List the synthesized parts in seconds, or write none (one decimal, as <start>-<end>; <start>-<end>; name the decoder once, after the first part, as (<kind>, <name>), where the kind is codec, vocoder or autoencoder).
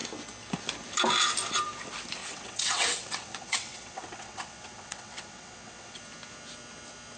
2.2-6.0 (vocoder, WaveNeXt)